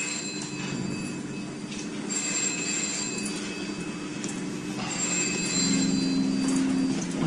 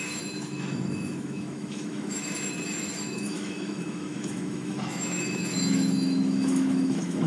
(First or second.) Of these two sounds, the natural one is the first